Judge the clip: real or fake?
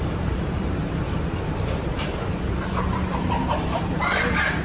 fake